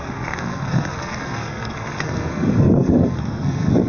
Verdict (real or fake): fake